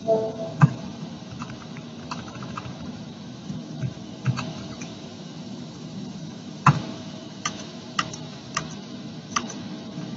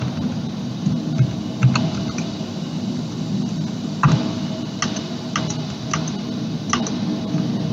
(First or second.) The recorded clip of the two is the second